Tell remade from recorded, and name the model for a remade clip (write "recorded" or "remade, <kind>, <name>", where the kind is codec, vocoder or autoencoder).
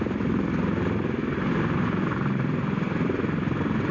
remade, vocoder, BigVGAN v2